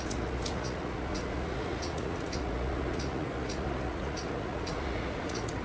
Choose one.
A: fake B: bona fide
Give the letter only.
A